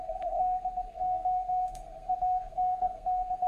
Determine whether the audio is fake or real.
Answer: fake